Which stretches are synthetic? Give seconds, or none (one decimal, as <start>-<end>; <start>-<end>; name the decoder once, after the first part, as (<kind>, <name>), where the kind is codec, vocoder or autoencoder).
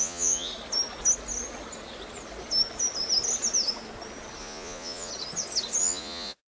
0.0-0.5 (vocoder, Vocos); 4.4-5.1; 5.8-6.5